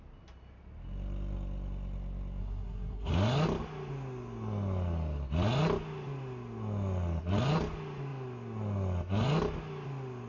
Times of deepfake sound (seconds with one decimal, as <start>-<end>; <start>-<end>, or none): 2.4-3.1